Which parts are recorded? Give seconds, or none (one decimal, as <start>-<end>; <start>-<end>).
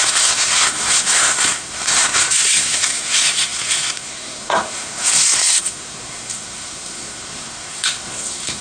none